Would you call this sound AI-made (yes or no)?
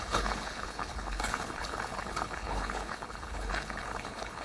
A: yes